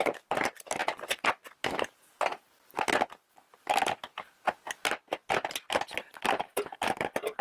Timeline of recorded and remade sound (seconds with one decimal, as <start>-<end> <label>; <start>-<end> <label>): 0.0-7.4 recorded